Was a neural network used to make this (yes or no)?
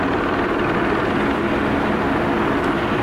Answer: no